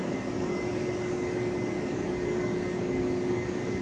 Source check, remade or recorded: remade